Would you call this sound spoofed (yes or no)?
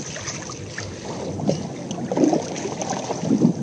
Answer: no